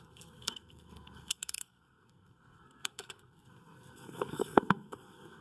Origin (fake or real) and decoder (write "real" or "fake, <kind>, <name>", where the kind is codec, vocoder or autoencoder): fake, codec, SNAC